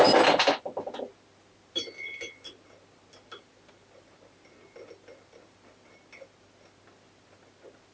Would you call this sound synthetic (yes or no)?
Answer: no